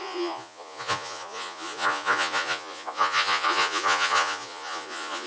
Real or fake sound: fake